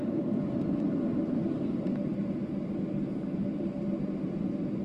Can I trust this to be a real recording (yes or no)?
no